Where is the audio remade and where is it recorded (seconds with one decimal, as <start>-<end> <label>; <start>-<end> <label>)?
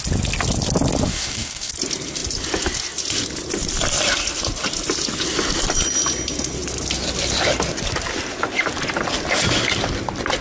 0.0-1.1 recorded; 1.1-1.7 remade; 1.7-10.4 recorded